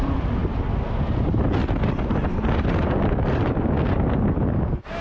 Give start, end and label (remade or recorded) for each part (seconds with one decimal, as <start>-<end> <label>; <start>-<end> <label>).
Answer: 0.0-5.0 recorded